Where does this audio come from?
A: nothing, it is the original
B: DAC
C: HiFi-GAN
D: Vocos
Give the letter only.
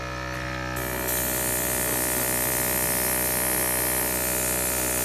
A